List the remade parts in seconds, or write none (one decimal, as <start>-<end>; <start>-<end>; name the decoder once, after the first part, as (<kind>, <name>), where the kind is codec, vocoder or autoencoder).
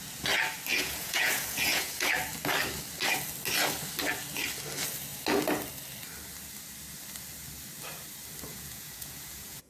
0.7-2.1 (vocoder, Vocos); 8.5-9.7